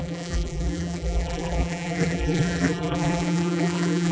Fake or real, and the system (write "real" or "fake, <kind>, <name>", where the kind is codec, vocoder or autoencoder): fake, vocoder, BigVGAN v2